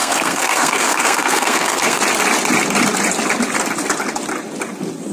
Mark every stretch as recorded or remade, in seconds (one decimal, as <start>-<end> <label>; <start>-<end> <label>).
0.0-2.0 remade; 2.0-5.1 recorded